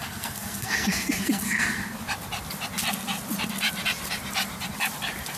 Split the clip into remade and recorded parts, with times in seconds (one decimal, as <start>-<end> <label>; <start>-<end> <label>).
0.0-1.9 remade; 1.9-5.4 recorded